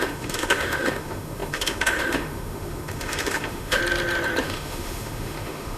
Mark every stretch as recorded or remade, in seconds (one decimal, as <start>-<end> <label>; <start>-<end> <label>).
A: 0.0-3.8 remade; 3.8-4.4 recorded; 4.4-5.8 remade